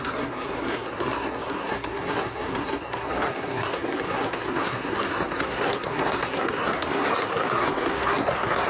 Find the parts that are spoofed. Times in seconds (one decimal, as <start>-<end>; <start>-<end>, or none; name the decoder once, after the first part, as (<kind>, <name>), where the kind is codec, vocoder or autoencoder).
0.0-8.7 (codec, SNAC)